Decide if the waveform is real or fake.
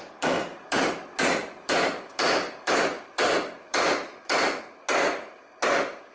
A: fake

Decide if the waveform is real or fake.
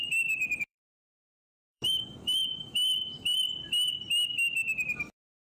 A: fake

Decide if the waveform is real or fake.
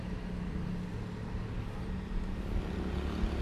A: real